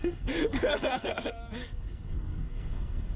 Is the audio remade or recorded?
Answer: remade